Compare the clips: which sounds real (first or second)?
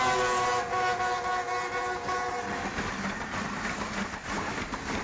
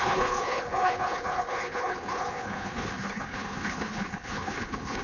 first